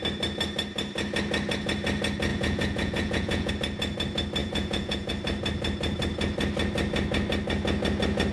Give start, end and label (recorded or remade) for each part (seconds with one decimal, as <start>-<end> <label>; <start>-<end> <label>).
0.0-2.3 recorded; 2.3-3.5 remade; 3.5-4.4 recorded; 4.4-5.1 remade; 5.1-8.3 recorded